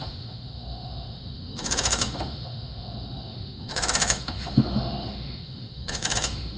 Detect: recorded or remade remade